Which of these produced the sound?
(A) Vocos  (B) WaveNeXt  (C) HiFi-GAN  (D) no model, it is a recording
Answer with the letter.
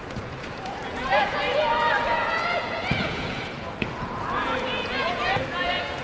A